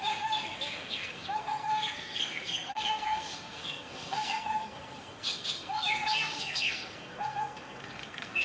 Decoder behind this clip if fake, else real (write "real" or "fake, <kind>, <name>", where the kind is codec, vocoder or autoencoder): fake, codec, SNAC